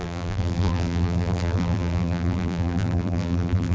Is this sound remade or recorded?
remade